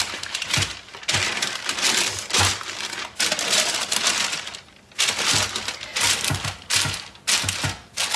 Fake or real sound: real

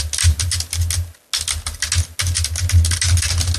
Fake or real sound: real